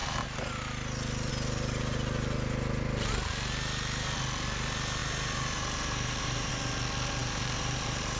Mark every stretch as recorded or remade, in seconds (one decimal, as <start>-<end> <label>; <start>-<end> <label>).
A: 0.0-5.0 recorded; 5.0-6.5 remade; 6.5-7.2 recorded; 7.2-8.2 remade